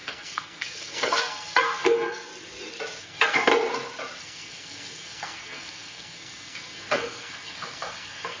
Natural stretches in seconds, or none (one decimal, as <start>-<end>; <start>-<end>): 2.3-3.0; 3.5-4.2